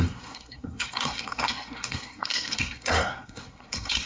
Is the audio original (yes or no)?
no